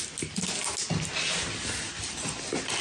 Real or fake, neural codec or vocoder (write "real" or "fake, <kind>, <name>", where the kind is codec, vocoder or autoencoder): real